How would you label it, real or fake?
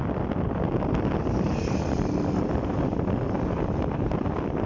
real